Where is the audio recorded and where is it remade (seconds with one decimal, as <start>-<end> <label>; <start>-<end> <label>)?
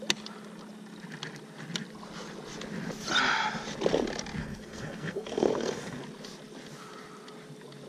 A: 0.0-4.4 recorded; 4.4-6.0 remade; 6.0-7.9 recorded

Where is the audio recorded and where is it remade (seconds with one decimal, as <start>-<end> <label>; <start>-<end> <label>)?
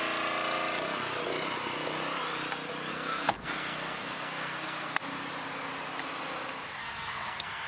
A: 0.0-2.9 recorded; 2.9-5.0 remade; 5.0-6.8 recorded; 6.8-7.7 remade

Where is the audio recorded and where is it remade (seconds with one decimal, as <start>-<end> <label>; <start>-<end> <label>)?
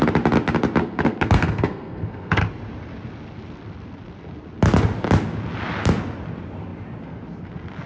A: 0.0-0.8 recorded; 0.8-2.4 remade; 2.4-7.9 recorded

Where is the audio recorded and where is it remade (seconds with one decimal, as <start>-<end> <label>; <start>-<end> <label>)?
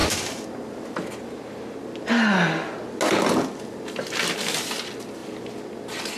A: 0.0-6.2 recorded